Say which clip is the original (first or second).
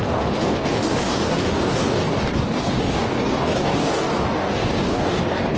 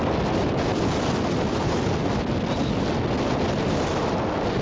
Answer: second